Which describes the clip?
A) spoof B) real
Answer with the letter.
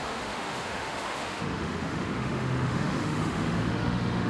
A